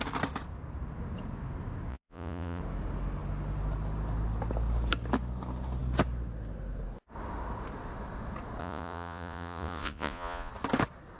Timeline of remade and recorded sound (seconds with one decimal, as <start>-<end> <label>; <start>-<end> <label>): 0.0-1.9 recorded; 1.9-2.6 remade; 2.6-8.6 recorded; 8.6-10.5 remade; 10.5-11.2 recorded